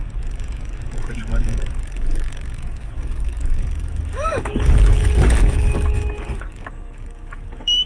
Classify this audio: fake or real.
fake